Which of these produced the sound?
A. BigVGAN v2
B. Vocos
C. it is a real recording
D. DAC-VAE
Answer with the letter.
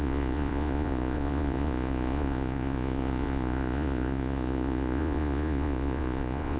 B